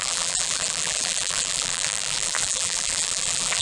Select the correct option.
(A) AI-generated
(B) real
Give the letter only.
A